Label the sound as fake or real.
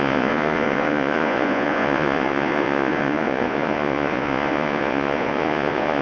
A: fake